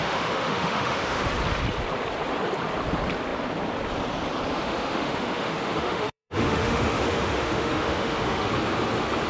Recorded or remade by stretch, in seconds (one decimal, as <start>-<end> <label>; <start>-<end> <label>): 0.0-1.3 remade; 1.3-4.5 recorded; 4.5-8.5 remade; 8.5-9.3 recorded